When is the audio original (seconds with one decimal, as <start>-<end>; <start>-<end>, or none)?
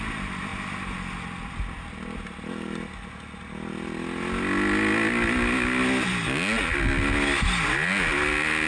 0.0-8.7